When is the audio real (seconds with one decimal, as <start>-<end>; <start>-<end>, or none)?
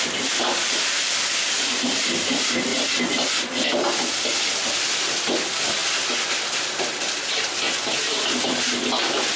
2.7-4.4; 5.8-6.4